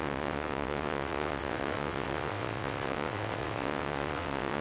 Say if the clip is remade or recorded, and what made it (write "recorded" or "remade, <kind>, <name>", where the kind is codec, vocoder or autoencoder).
remade, vocoder, WaveNeXt